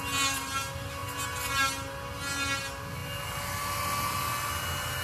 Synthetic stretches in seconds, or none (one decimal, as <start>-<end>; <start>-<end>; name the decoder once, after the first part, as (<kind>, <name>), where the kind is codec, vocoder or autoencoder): none